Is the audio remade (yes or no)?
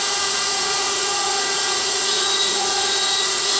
yes